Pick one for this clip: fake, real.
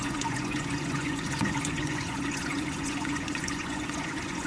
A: fake